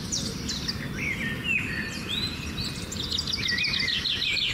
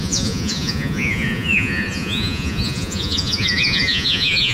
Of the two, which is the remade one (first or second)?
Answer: second